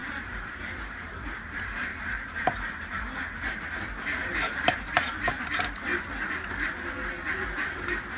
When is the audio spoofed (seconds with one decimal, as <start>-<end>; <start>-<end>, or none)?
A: 0.0-3.6; 4.2-5.4